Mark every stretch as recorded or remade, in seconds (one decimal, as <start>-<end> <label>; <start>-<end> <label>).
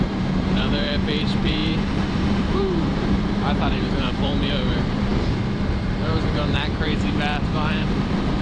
0.0-8.4 remade